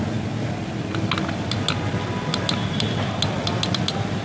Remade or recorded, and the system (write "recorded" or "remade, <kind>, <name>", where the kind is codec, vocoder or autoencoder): recorded